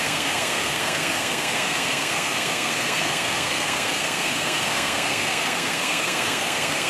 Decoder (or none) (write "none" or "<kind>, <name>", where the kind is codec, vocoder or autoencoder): codec, SNAC